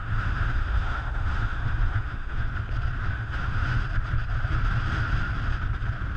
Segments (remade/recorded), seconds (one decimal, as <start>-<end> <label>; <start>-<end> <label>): 0.0-2.5 remade; 2.5-3.1 recorded; 3.1-3.8 remade; 3.8-6.2 recorded